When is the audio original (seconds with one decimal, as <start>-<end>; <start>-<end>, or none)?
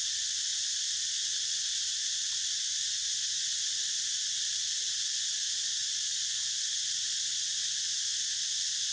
0.0-8.9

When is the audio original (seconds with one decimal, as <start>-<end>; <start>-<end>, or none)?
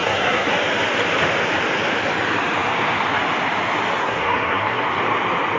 0.5-4.0; 4.9-5.6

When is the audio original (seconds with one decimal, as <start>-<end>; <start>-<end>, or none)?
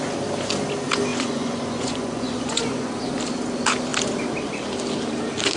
0.0-1.1; 2.9-5.6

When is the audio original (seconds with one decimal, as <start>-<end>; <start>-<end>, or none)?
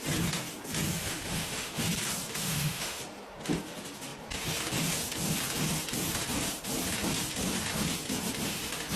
0.0-1.0; 1.8-2.3; 3.0-9.0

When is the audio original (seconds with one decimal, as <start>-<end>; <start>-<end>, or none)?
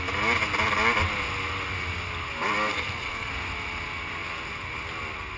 0.0-2.7; 3.3-5.4